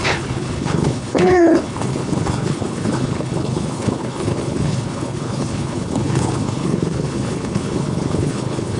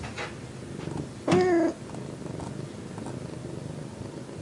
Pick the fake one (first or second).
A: first